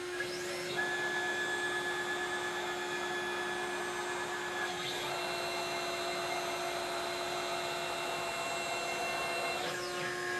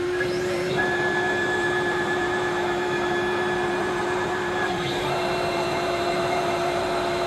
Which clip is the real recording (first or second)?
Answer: first